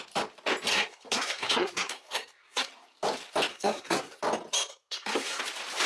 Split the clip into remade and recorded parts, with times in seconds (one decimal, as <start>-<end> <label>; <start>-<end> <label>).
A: 0.0-0.7 recorded; 0.7-2.7 remade; 2.7-3.5 recorded; 3.5-4.2 remade; 4.2-4.7 recorded; 4.7-5.4 remade; 5.4-5.9 recorded

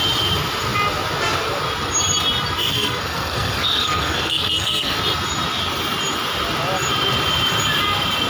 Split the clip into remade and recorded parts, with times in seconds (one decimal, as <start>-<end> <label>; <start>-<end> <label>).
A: 0.0-2.6 recorded; 2.6-5.0 remade; 5.0-8.3 recorded

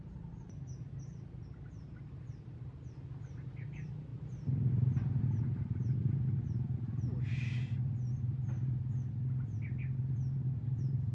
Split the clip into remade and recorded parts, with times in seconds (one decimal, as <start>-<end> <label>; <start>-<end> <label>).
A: 0.0-11.1 recorded

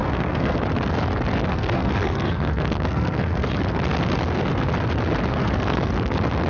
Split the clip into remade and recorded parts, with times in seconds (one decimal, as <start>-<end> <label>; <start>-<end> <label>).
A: 0.0-0.6 remade; 0.6-1.5 recorded; 1.5-3.5 remade; 3.5-5.3 recorded; 5.3-5.9 remade; 5.9-6.5 recorded

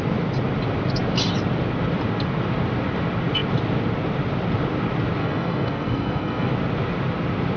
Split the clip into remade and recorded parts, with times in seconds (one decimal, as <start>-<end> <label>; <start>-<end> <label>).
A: 0.0-5.2 recorded; 5.2-6.5 remade; 6.5-7.6 recorded

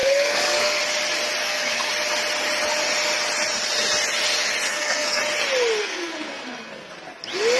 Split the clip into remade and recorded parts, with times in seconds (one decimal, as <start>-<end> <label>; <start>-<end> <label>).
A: 0.0-0.8 remade; 0.8-1.4 recorded; 1.4-1.9 remade; 1.9-4.7 recorded; 4.7-5.2 remade; 5.2-5.8 recorded; 5.8-6.9 remade; 6.9-7.6 recorded